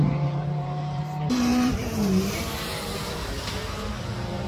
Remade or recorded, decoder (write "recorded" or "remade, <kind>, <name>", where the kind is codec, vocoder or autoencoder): remade, vocoder, BigVGAN v2